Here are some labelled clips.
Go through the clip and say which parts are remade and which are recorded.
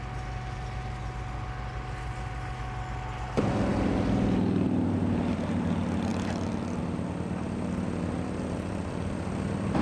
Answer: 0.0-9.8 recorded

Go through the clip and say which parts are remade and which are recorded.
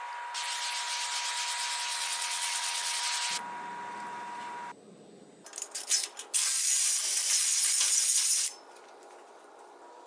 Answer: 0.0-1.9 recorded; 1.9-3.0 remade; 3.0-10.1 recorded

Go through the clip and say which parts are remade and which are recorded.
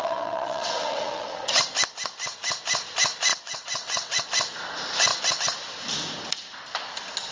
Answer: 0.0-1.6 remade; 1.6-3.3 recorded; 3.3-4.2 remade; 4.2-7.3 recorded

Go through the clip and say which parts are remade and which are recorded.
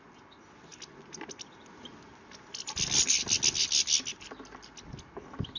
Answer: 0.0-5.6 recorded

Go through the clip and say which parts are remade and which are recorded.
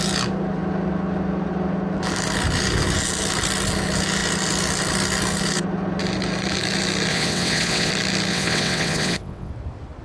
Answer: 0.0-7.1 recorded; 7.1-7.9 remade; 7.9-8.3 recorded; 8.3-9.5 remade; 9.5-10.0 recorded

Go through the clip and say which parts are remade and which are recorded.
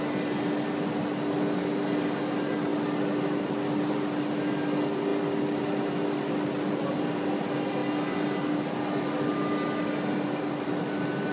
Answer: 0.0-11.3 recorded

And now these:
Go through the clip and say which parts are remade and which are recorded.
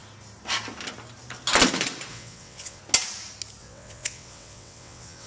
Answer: 0.0-2.1 recorded; 2.1-2.8 remade; 2.8-3.6 recorded; 3.6-5.3 remade